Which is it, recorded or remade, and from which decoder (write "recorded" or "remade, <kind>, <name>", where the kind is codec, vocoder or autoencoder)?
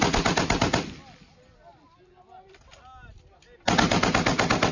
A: recorded